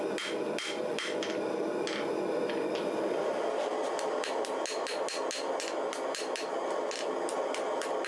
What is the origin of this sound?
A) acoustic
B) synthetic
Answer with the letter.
A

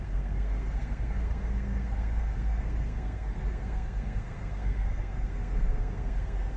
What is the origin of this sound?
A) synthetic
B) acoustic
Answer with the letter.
A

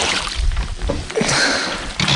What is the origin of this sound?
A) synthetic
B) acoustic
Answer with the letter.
B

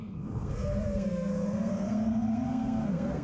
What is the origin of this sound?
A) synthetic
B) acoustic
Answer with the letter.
A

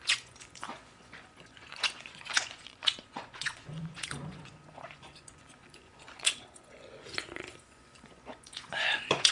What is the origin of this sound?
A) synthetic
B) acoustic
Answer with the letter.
A